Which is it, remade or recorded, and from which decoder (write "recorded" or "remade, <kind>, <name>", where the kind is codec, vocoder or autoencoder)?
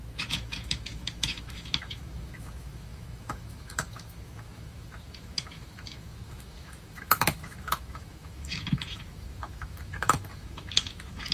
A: remade, autoencoder, DAC-VAE